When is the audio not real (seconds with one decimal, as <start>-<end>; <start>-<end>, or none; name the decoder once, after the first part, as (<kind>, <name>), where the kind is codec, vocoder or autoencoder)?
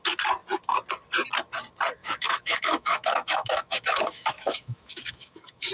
2.0-5.7 (autoencoder, DAC-VAE)